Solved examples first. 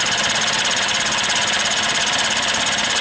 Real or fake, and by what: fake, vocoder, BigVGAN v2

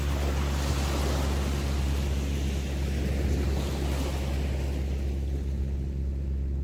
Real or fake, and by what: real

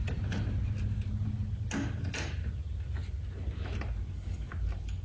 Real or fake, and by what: real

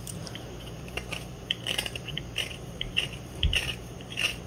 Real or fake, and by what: fake, vocoder, BigVGAN v2